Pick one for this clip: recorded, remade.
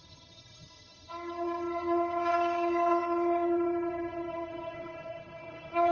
remade